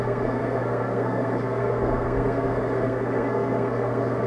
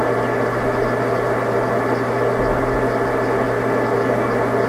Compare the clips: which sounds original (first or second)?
second